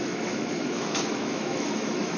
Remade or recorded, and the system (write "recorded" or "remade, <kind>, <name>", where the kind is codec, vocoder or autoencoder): remade, autoencoder, DAC-VAE